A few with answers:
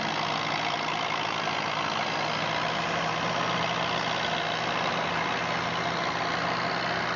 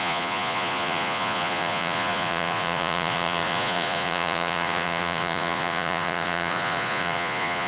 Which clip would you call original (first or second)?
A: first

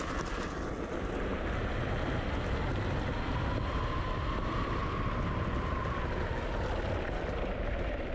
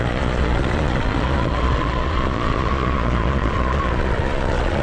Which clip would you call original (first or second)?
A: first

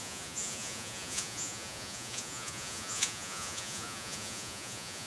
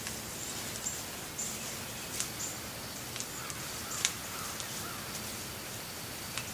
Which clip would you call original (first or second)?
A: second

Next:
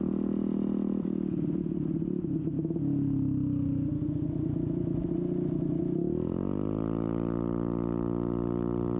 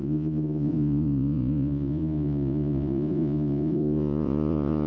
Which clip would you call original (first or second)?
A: first